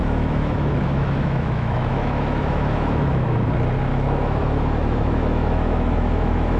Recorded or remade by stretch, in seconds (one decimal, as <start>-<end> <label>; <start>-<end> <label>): 0.0-3.5 remade; 3.5-3.9 recorded; 3.9-6.6 remade